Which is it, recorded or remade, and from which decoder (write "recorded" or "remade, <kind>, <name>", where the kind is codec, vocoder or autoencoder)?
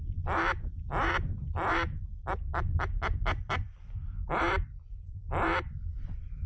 remade, vocoder, BigVGAN v2